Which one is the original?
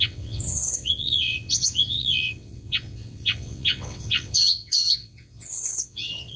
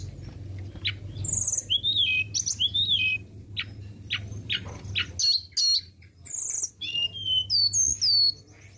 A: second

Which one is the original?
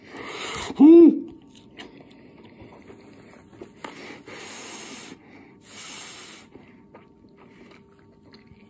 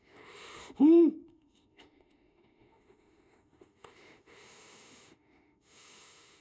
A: first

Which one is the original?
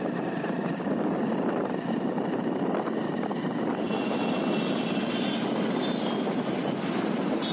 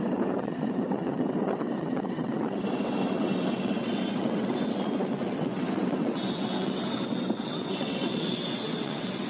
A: first